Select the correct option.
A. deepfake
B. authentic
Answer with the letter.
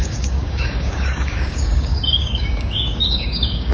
A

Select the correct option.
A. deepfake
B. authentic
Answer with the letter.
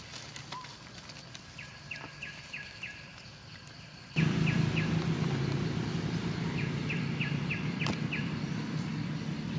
B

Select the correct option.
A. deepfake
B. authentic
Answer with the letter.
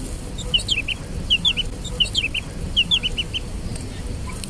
B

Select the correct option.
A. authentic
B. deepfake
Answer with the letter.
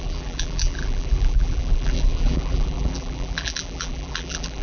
B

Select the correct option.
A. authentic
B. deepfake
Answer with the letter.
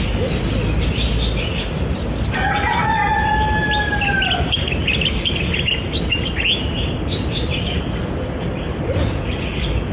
A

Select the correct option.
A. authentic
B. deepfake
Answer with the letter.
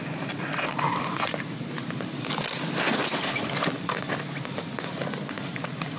A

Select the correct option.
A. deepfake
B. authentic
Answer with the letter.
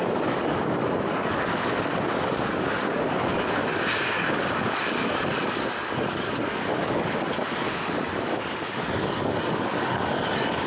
A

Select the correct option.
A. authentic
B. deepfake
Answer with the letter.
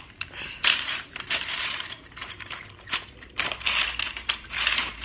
B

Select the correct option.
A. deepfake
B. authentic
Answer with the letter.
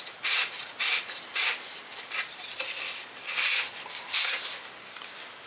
B